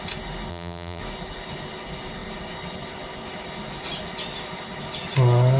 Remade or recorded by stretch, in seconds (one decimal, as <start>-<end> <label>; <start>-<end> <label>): 0.0-0.5 recorded; 0.5-1.0 remade; 1.0-5.6 recorded